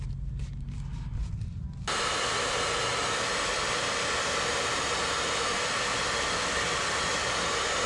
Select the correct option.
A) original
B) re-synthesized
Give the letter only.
A